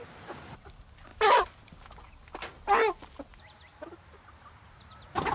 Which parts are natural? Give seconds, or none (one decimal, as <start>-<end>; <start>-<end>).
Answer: 0.0-5.3